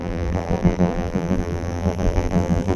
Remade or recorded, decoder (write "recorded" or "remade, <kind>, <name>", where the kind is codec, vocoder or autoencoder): remade, vocoder, BigVGAN v2